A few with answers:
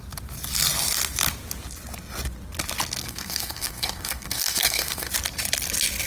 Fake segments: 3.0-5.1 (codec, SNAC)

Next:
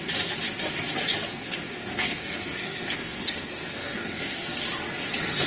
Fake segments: 1.3-4.6 (codec, SNAC)

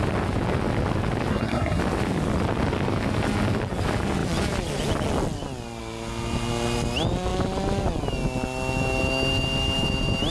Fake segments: 1.3-1.8 (codec, SNAC)

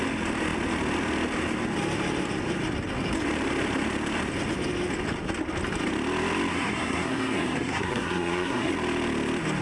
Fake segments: 6.5-8.7 (codec, SNAC)

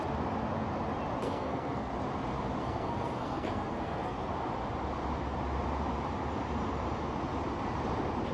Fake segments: 1.2-1.9 (codec, SNAC); 2.6-4.3

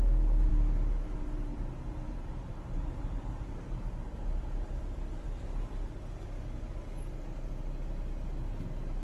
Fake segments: none